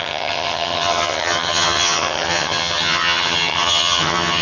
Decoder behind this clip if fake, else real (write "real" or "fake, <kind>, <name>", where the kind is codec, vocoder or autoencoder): fake, vocoder, HiFi-GAN